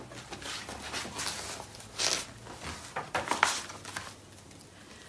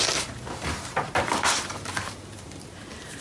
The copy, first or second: second